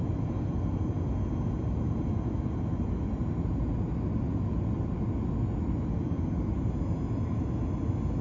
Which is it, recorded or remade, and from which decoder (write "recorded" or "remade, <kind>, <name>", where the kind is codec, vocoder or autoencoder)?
recorded